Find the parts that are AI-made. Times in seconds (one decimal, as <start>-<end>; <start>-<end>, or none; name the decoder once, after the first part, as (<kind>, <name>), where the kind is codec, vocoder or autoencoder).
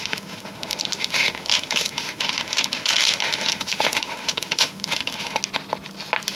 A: 0.0-5.4 (autoencoder, DAC-VAE)